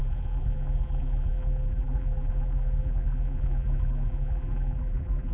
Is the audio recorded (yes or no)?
no